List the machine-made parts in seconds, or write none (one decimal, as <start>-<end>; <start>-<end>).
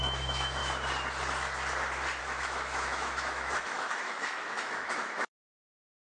0.0-0.6; 2.2-6.0